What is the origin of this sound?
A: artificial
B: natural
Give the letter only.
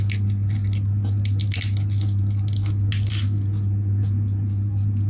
B